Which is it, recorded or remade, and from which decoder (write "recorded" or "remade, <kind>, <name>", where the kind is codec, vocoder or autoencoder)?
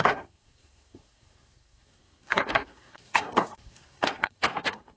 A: remade, codec, SNAC